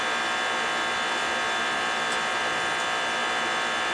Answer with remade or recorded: recorded